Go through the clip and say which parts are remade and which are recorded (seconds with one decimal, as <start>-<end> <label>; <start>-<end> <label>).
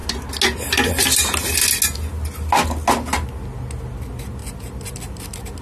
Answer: 0.0-5.6 recorded